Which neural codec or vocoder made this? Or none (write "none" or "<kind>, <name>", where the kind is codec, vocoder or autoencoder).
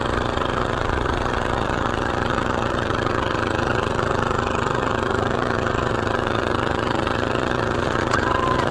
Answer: vocoder, Vocos